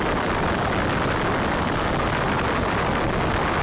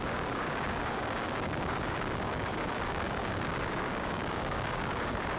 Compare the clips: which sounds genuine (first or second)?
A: first